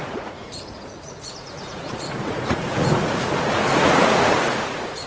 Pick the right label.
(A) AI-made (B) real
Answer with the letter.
A